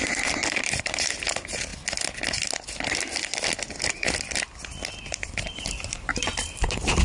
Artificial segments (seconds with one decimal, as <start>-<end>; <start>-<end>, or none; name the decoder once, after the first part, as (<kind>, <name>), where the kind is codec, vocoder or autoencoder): 0.0-1.7 (vocoder, BigVGAN v2); 5.2-7.0